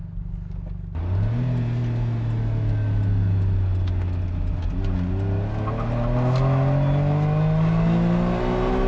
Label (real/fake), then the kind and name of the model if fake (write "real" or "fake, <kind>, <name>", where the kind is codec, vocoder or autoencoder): real